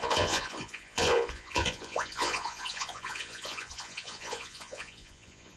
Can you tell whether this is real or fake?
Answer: fake